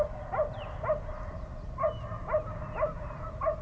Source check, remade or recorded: recorded